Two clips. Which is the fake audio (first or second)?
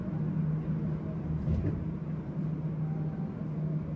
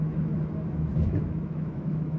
second